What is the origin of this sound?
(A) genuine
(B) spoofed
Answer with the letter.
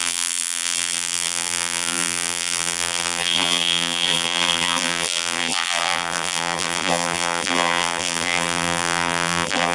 B